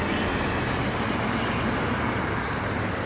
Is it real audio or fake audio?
real